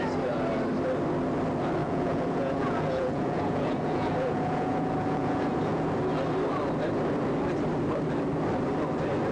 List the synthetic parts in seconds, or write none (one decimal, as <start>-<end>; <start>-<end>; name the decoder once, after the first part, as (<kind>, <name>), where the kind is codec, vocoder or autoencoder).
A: 1.8-5.9 (vocoder, Vocos)